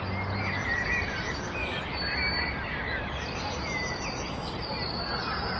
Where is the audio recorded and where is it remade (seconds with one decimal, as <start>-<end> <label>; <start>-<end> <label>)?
0.0-5.6 recorded